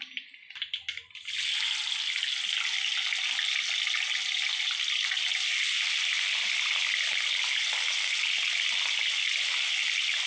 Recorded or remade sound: recorded